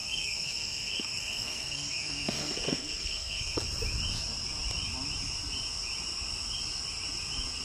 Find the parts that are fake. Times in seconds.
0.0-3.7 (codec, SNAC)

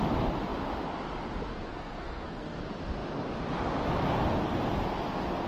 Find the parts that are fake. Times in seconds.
1.5-2.6 (codec, SNAC)

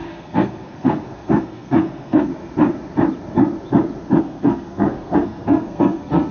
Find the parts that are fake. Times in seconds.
0.0-2.3 (codec, SNAC); 4.2-6.3

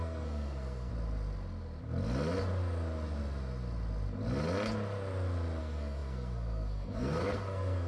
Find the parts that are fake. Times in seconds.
0.0-0.9 (codec, SNAC); 5.6-7.9

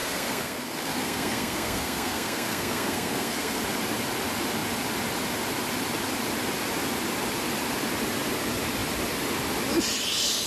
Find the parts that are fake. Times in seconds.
0.0-3.6 (codec, SNAC)